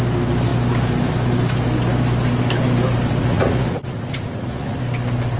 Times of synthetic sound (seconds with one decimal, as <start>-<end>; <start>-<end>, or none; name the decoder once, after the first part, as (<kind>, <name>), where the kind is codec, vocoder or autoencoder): 3.2-4.8 (vocoder, Vocos)